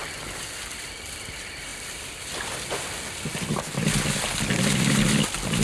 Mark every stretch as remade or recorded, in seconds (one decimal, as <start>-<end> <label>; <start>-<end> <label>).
0.0-5.6 recorded